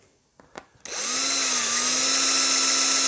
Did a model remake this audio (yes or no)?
no